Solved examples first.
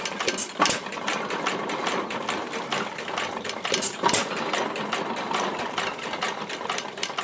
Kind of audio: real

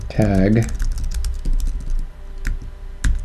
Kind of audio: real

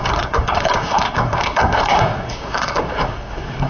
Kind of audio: fake